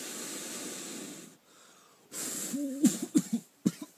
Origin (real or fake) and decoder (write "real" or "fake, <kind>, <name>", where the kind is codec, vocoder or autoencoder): real